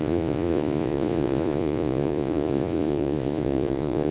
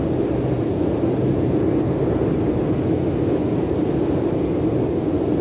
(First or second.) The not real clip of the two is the first